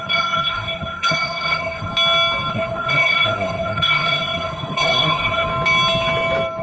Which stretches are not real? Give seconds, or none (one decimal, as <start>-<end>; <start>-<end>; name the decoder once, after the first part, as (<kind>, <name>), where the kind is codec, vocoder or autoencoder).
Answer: 0.0-1.9 (codec, SNAC); 2.5-5.5